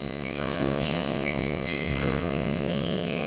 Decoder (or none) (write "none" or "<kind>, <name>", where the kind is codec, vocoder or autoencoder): vocoder, WaveNeXt